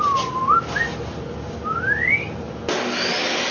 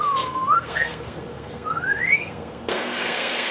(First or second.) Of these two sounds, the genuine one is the first